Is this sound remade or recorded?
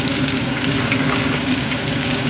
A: remade